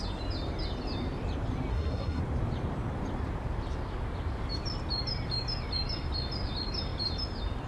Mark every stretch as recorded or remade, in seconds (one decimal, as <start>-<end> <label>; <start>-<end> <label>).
0.0-1.7 recorded; 1.7-2.2 remade; 2.2-7.7 recorded